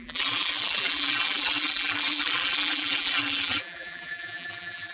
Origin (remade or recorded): remade